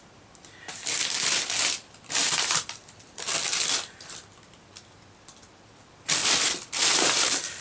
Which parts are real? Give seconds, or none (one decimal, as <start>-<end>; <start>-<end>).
0.0-6.2